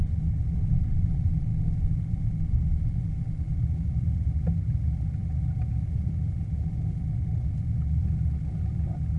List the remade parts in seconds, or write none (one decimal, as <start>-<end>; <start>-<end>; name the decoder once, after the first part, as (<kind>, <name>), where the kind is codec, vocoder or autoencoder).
0.0-1.5 (vocoder, BigVGAN v2); 3.6-5.2; 5.8-9.2